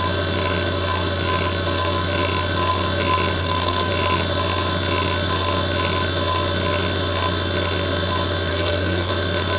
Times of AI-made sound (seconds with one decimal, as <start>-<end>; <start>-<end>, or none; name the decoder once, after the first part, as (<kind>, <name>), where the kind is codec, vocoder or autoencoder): 3.4-3.9 (codec, SNAC); 8.5-9.1